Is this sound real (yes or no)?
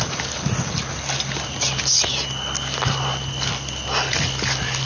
yes